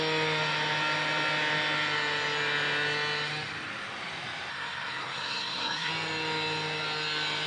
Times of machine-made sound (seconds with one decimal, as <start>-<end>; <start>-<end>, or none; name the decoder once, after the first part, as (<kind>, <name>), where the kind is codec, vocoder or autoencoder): 4.5-5.9 (codec, SNAC)